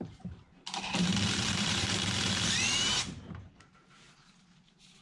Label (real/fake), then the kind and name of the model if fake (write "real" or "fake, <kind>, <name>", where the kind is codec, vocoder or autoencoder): fake, vocoder, BigVGAN v2